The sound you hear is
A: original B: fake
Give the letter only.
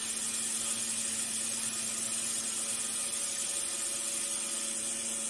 A